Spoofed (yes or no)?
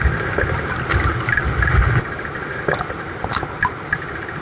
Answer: no